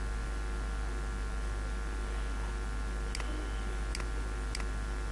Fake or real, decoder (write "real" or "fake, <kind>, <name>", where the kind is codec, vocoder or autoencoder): real